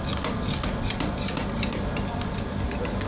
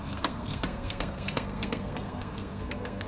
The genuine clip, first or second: first